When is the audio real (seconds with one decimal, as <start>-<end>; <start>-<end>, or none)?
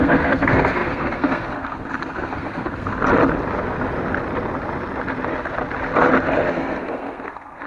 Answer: 3.0-6.5